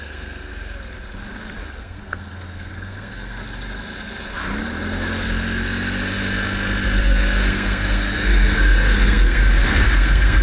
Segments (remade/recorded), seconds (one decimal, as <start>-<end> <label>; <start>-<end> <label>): 0.0-0.5 remade; 0.5-1.8 recorded; 1.8-3.4 remade; 3.4-7.0 recorded; 7.0-10.4 remade